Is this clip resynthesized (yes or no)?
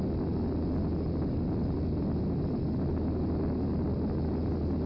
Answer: no